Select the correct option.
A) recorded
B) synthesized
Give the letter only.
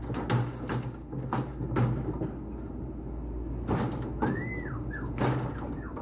A